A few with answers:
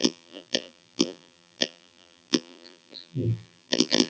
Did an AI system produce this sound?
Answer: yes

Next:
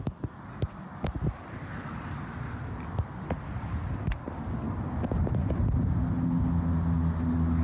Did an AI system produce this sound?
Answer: no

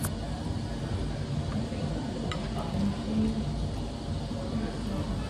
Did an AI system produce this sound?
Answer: no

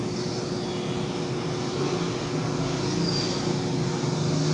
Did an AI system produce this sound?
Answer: no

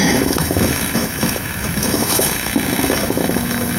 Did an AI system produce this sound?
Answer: yes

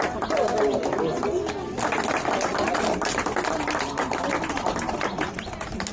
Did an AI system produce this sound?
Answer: no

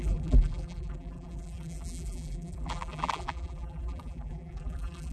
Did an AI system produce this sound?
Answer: yes